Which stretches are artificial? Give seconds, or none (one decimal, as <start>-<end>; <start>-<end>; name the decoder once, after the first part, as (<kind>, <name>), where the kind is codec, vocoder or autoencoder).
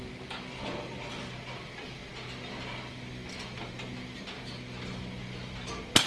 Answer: none